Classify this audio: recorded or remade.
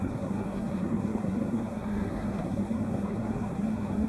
remade